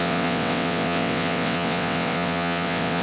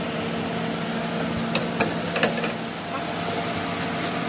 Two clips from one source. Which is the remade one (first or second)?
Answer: first